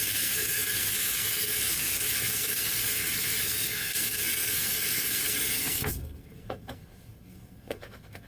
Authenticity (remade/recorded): remade